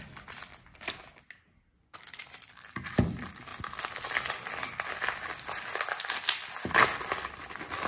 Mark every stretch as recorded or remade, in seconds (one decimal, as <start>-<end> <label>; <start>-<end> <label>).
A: 0.0-0.5 remade; 0.5-2.1 recorded; 2.1-3.5 remade; 3.5-6.7 recorded; 6.7-7.9 remade